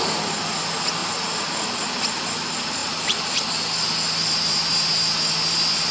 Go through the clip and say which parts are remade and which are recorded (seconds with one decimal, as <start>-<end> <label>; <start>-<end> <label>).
0.0-2.8 recorded; 2.8-3.5 remade; 3.5-5.9 recorded